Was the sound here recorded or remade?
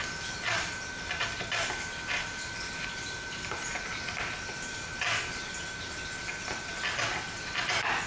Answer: recorded